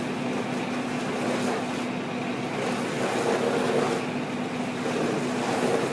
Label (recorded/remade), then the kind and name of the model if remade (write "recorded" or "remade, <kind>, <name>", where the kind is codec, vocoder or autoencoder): recorded